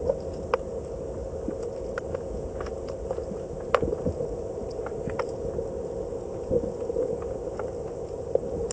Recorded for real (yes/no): yes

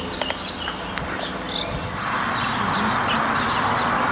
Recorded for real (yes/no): yes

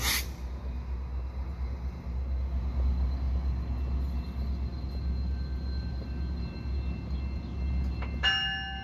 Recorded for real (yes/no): yes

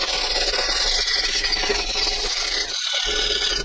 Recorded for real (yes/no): yes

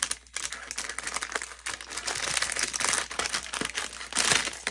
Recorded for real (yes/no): yes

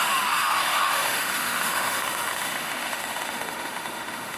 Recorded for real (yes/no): no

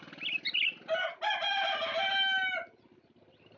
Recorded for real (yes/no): yes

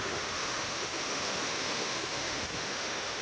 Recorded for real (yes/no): no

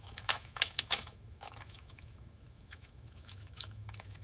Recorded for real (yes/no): no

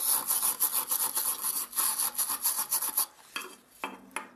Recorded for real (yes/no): yes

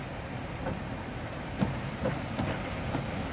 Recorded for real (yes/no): yes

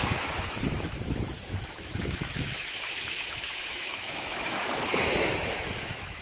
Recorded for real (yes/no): no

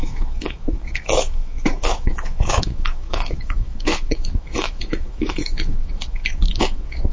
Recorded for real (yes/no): no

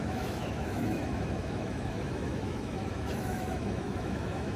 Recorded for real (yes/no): no